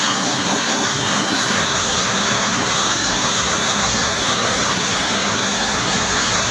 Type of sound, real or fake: fake